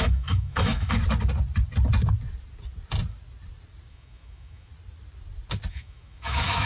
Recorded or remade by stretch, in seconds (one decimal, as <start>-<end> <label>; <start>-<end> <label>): 0.0-1.0 remade; 1.0-3.9 recorded; 3.9-4.7 remade; 4.7-5.7 recorded; 5.7-6.7 remade